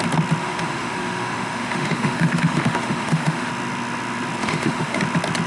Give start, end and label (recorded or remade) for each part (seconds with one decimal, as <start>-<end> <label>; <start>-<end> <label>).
0.0-0.4 recorded; 0.4-3.5 remade; 3.5-4.4 recorded; 4.4-5.0 remade; 5.0-5.5 recorded